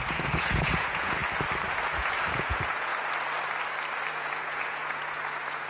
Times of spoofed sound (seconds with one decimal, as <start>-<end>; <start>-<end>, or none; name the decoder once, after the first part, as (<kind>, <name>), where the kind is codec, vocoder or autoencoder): 0.0-1.2 (vocoder, Vocos); 1.7-2.9; 4.1-5.7